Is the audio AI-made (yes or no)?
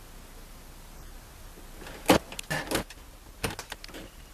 no